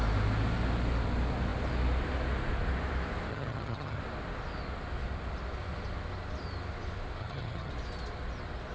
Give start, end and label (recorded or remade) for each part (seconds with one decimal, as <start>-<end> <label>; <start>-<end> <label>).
0.0-3.3 recorded; 3.3-4.0 remade; 4.0-7.2 recorded; 7.2-7.7 remade; 7.7-8.7 recorded